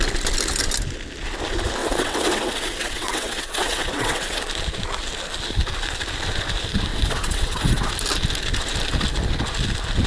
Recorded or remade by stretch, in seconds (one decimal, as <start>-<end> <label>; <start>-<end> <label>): 0.0-1.8 recorded; 1.8-4.4 remade; 4.4-6.9 recorded; 6.9-7.9 remade; 7.9-10.1 recorded